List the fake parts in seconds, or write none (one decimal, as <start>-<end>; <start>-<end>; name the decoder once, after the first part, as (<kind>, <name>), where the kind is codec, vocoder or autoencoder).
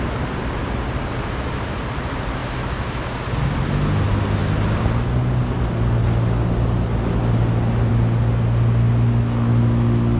none